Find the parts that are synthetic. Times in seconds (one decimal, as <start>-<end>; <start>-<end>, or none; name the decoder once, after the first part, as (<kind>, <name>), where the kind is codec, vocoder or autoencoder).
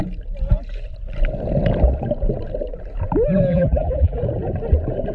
3.5-4.2 (vocoder, BigVGAN v2)